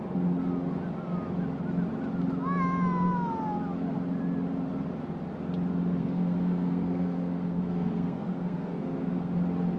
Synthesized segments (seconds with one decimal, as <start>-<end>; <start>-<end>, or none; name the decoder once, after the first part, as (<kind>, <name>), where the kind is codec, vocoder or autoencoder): 6.0-9.3 (codec, SNAC)